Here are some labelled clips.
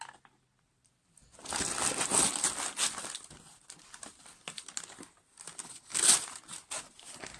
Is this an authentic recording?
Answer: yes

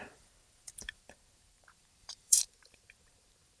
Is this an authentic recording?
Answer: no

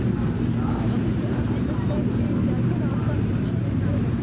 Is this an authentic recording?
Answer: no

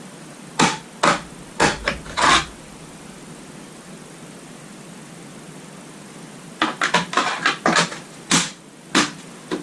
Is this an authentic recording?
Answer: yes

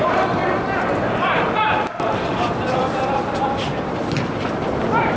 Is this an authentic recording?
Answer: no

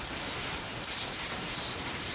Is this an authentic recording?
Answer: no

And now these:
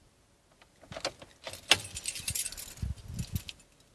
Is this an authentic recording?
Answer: yes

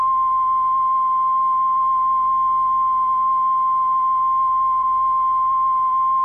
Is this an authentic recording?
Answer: no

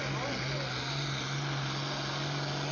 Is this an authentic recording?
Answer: yes